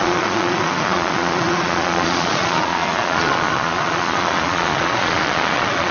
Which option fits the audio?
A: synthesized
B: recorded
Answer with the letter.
A